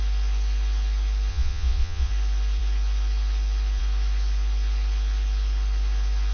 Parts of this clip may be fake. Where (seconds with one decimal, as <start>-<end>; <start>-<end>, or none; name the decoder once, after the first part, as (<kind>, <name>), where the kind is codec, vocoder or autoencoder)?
1.3-2.1 (vocoder, Vocos)